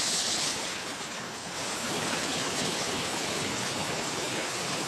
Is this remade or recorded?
remade